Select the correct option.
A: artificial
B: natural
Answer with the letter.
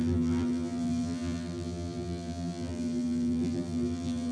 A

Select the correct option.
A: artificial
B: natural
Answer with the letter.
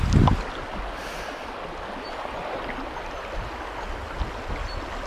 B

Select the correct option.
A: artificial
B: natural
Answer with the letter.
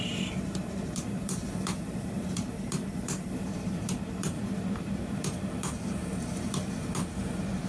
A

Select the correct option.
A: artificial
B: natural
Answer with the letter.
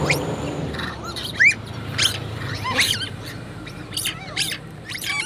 A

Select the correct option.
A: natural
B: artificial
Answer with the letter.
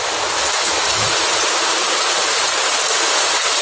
A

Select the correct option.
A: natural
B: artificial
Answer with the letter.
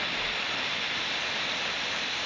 B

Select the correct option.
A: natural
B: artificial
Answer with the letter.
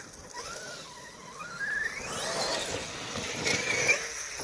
A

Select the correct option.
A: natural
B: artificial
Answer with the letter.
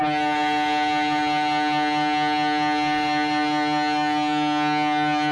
A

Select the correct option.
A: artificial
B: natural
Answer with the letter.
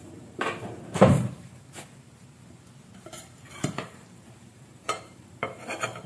A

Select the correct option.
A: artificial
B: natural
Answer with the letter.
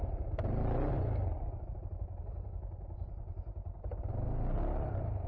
B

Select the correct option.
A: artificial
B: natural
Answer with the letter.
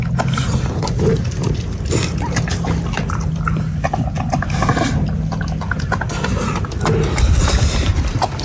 B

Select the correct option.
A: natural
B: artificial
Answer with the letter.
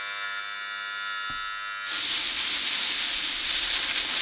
A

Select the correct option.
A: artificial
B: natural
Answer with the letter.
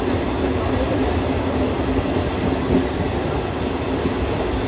B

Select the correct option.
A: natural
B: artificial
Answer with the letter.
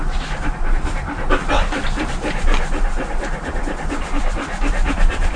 B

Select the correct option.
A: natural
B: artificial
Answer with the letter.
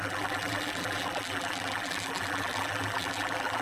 B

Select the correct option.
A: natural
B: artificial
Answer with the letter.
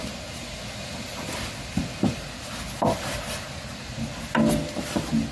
A